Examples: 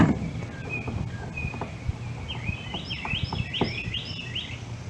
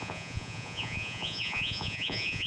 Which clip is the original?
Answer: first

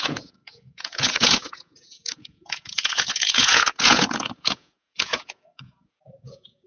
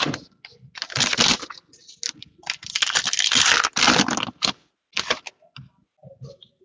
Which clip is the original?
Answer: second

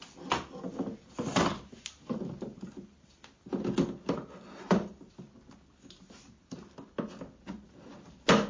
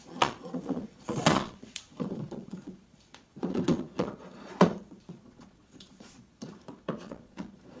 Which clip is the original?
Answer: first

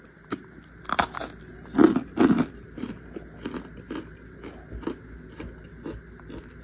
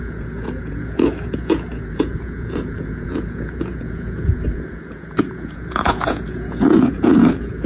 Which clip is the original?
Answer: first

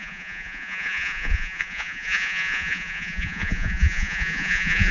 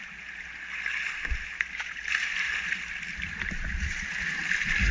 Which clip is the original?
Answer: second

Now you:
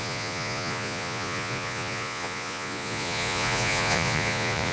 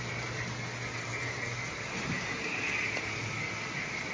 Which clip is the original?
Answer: second